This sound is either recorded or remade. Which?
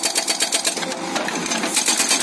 recorded